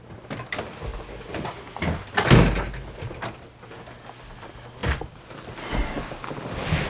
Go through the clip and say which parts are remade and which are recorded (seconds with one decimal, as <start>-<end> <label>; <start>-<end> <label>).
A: 0.0-6.9 recorded